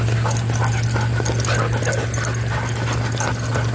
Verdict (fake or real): real